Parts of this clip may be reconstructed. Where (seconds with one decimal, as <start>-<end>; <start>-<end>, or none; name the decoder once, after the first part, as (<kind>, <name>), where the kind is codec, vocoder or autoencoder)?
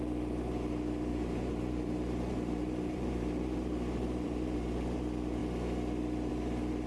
1.1-5.0 (vocoder, BigVGAN v2)